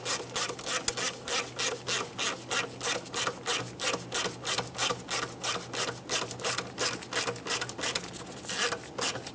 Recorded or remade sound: recorded